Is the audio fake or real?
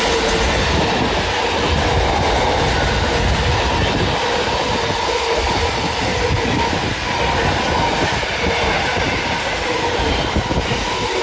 real